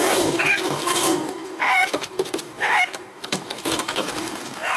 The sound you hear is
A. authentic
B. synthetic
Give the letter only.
B